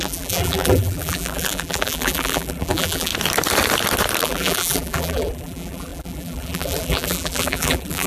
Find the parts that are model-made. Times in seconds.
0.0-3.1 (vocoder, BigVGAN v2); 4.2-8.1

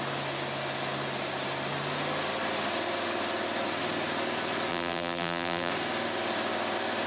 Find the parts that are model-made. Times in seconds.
4.7-5.7 (vocoder, BigVGAN v2)

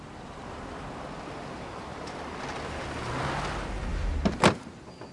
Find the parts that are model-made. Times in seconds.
none

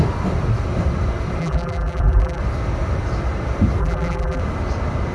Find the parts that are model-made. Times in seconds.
1.4-2.4 (vocoder, BigVGAN v2); 3.8-4.4

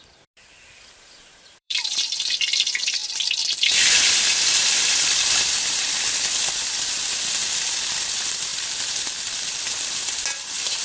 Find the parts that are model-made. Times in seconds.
0.0-8.5 (vocoder, BigVGAN v2); 9.3-10.8

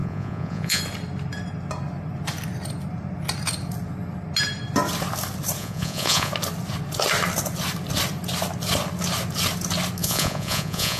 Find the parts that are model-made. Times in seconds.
0.0-0.8 (vocoder, Vocos); 5.6-6.3; 10.0-11.0

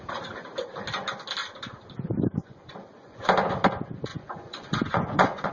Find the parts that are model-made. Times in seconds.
2.4-3.2 (vocoder, Vocos); 4.1-5.5